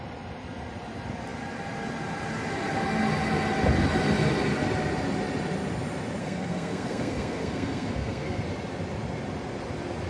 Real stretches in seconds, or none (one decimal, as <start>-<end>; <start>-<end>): 0.0-6.2; 8.4-10.1